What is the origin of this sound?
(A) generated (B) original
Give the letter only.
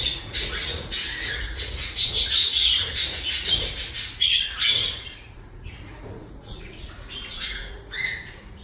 A